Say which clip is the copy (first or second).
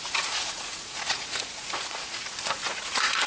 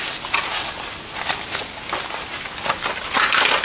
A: first